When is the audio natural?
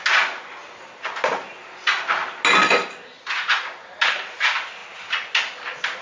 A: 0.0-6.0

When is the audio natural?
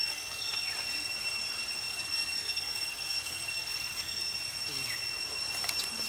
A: 0.7-1.9; 4.2-6.1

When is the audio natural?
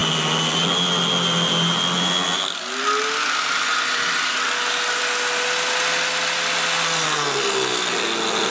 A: 0.0-8.5